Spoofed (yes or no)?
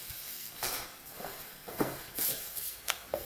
yes